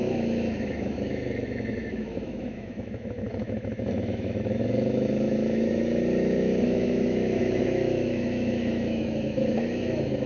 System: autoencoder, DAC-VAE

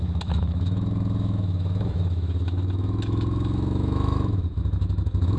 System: autoencoder, DAC-VAE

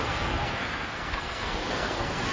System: codec, SNAC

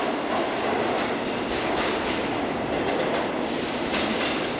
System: none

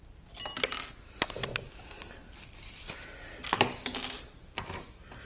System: none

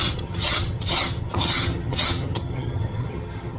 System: vocoder, HiFi-GAN